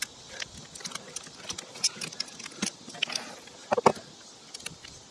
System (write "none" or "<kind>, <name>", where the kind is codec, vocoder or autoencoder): none